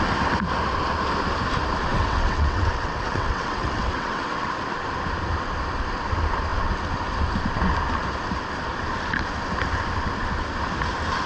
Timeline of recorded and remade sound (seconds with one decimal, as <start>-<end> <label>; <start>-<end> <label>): 0.0-1.9 recorded; 1.9-4.5 remade; 4.5-11.3 recorded

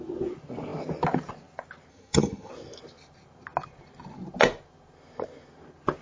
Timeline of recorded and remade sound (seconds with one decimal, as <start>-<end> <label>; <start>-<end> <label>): 0.0-1.9 recorded; 1.9-2.5 remade; 2.5-6.0 recorded

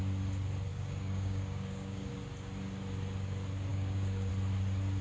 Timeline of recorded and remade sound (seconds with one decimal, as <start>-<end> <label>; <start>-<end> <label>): 0.0-0.7 recorded; 0.7-2.1 remade; 2.1-3.7 recorded; 3.7-4.3 remade; 4.3-5.0 recorded

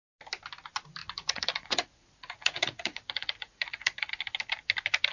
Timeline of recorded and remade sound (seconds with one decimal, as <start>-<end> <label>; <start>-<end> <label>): 0.0-1.0 recorded; 1.0-4.1 remade; 4.1-5.1 recorded

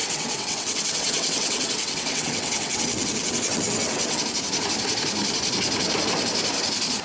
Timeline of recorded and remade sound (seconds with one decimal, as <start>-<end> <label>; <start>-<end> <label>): 0.0-4.2 remade; 4.2-7.0 recorded